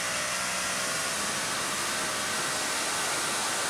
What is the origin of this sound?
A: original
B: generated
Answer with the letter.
A